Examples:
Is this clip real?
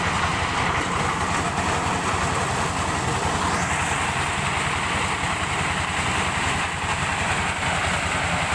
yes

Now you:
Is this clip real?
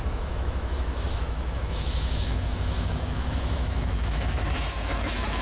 no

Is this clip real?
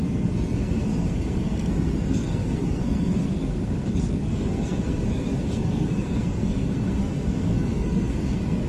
no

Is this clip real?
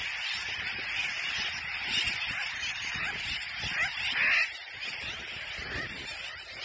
yes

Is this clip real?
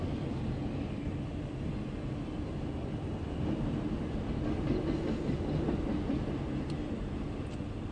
yes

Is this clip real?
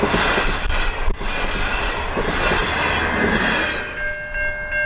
yes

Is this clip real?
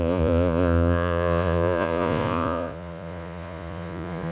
no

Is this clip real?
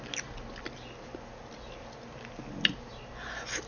yes